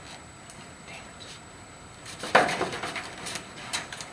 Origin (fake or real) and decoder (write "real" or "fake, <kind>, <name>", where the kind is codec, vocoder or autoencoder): fake, vocoder, BigVGAN v2